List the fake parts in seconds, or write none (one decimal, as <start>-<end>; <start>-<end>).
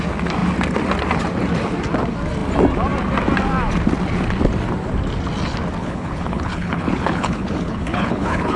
5.8-8.6